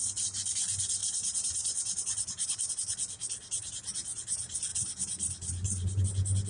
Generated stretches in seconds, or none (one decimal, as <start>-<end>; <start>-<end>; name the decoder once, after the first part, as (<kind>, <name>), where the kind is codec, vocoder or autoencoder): 1.0-2.7 (vocoder, BigVGAN v2); 4.7-6.0